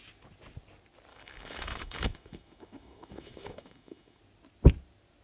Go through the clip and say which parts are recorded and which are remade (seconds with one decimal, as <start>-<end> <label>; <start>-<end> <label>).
0.0-1.1 recorded; 1.1-4.2 remade; 4.2-5.2 recorded